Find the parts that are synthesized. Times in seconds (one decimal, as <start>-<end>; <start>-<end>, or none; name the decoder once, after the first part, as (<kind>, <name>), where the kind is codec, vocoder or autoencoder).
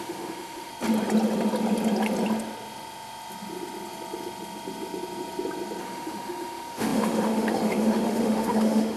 0.0-0.7 (autoencoder, DAC-VAE); 5.8-9.0